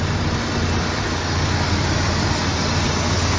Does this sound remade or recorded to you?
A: recorded